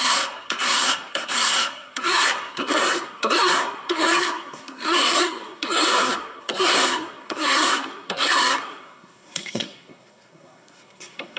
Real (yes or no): no